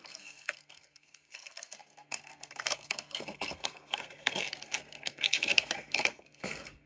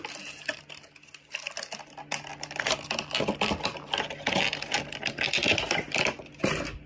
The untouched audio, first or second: second